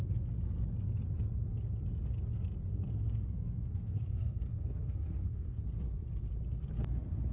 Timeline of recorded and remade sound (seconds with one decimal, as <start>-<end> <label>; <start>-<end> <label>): 0.0-2.7 recorded; 2.7-5.6 remade; 5.6-7.3 recorded